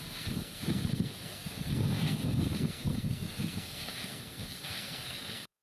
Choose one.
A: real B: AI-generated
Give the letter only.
B